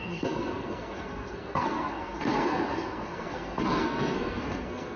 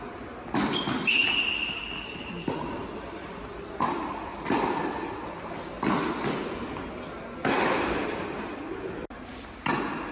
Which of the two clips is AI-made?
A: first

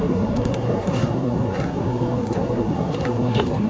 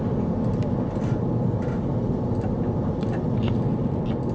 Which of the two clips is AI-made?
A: first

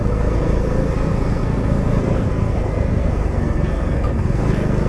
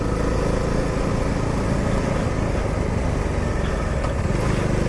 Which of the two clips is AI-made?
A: first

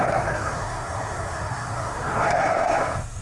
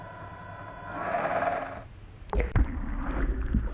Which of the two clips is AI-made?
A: first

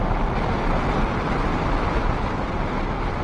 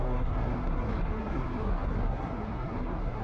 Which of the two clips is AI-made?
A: second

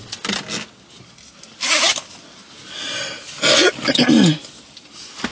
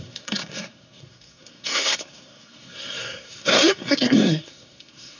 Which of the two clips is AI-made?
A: second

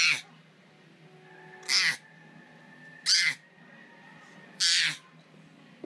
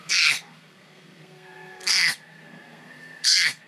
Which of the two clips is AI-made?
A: second